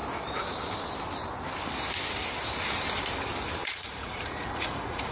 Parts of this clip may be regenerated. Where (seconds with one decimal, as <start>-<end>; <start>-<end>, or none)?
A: 3.6-5.1